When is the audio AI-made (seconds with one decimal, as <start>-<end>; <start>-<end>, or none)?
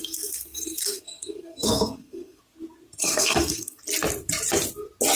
0.0-2.4; 3.0-3.8